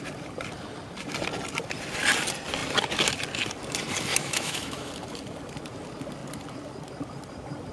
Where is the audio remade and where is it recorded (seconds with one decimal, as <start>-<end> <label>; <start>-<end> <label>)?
0.0-4.1 recorded; 4.1-4.9 remade; 4.9-7.7 recorded